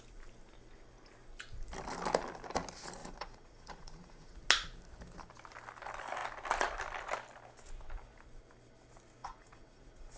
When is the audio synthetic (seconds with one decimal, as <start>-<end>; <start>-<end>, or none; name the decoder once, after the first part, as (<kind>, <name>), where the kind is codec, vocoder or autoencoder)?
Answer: 3.0-4.4 (vocoder, Vocos); 9.2-10.2